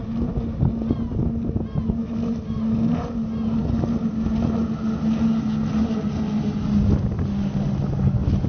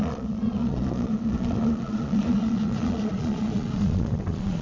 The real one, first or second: first